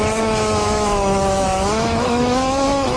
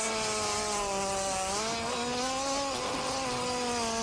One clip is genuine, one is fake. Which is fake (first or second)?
first